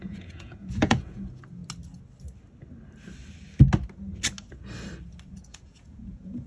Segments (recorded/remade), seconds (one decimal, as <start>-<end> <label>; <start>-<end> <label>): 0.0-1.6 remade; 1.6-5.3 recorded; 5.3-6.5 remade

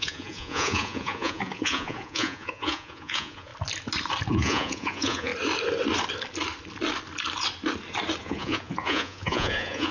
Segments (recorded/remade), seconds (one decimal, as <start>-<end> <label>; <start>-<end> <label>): 0.0-3.5 remade; 3.5-4.3 recorded; 4.3-5.3 remade; 5.3-8.2 recorded; 8.2-9.9 remade

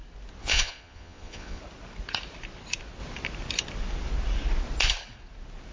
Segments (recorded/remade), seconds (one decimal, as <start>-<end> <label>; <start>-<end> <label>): 0.0-0.4 recorded; 0.4-1.6 remade; 1.6-5.7 recorded

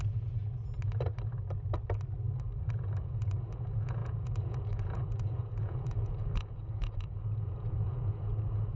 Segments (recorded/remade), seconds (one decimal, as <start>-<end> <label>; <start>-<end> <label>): 0.0-0.4 remade; 0.4-3.0 recorded; 3.0-8.8 remade